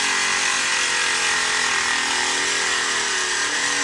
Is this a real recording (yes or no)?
yes